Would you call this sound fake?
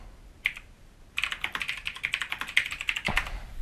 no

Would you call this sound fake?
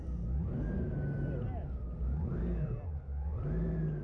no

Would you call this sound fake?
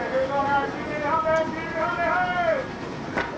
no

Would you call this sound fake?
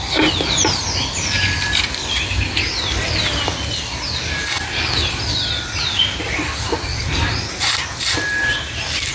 no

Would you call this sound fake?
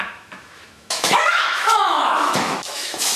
yes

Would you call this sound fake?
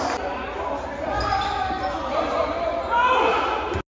no